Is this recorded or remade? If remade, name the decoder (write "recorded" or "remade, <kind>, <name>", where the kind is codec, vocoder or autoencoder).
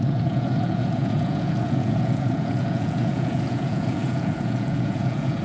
remade, vocoder, Vocos